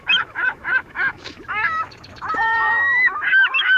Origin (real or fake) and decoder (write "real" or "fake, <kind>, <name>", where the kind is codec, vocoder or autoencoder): fake, autoencoder, DAC-VAE